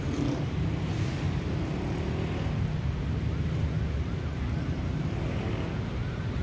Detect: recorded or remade recorded